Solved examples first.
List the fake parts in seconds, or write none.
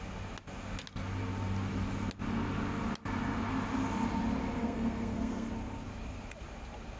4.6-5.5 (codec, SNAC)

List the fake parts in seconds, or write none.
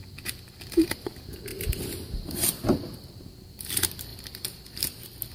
none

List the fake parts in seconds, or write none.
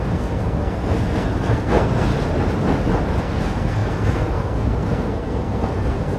0.0-2.1 (codec, SNAC); 3.2-6.2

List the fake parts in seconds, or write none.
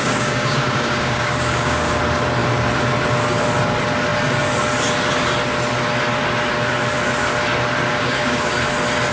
0.0-2.0 (codec, DAC); 7.9-8.5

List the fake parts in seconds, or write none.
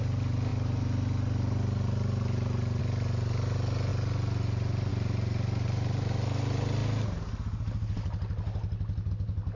none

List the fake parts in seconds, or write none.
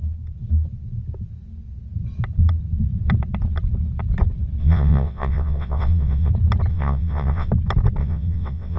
4.6-6.3 (vocoder, WaveNeXt); 6.7-7.5; 8.0-8.8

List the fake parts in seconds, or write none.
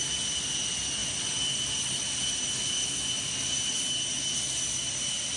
none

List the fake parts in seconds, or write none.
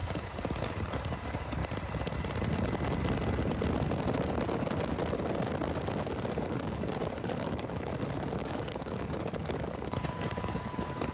0.0-1.6 (codec, DAC); 6.3-11.1